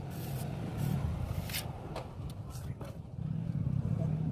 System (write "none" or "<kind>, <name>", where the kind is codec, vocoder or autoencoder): none